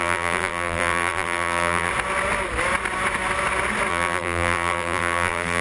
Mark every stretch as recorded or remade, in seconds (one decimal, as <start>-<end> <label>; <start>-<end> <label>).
0.0-1.9 remade; 1.9-3.9 recorded; 3.9-5.6 remade